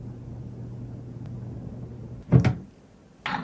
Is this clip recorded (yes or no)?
yes